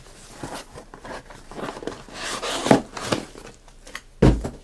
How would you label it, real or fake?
real